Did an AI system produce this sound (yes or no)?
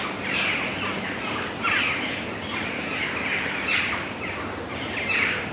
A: no